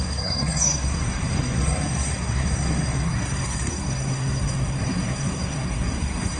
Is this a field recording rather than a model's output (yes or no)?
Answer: no